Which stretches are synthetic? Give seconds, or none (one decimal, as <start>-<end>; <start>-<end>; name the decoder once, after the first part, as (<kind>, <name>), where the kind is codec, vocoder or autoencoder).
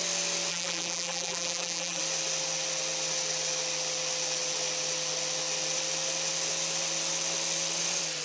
0.5-2.0 (vocoder, BigVGAN v2)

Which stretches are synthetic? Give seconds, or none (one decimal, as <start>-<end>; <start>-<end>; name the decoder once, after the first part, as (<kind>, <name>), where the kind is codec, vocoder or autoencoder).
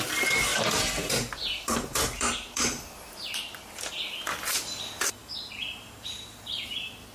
0.5-3.9 (vocoder, BigVGAN v2); 5.2-6.4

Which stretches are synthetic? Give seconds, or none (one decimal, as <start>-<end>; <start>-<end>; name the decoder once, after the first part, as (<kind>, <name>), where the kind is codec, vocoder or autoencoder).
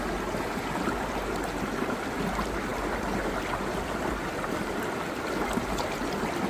none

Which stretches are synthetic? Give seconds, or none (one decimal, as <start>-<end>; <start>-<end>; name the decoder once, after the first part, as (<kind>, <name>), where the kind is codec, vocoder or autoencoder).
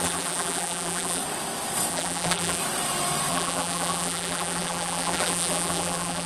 0.0-1.2 (vocoder, BigVGAN v2); 1.9-2.6; 3.3-6.3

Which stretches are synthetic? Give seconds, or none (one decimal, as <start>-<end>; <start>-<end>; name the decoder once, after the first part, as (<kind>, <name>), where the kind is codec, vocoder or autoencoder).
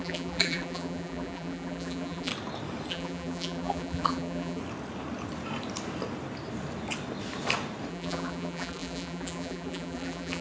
0.0-2.3 (vocoder, BigVGAN v2); 2.9-4.6; 7.9-10.4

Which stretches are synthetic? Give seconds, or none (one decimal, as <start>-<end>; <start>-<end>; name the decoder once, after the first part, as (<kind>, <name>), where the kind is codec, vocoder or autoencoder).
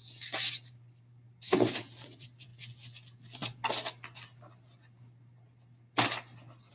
0.7-2.5 (vocoder, BigVGAN v2)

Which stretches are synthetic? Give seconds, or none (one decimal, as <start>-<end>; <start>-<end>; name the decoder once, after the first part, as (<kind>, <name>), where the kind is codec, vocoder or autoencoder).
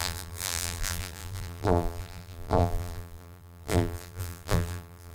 0.0-5.1 (vocoder, BigVGAN v2)